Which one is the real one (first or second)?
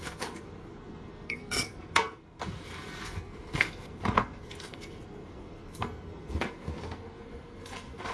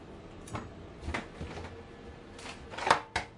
second